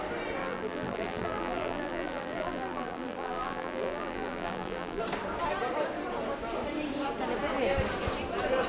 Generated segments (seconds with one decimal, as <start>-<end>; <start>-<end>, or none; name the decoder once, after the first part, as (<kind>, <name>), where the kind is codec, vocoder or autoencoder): 0.4-5.0 (vocoder, BigVGAN v2)